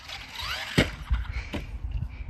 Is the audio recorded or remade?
recorded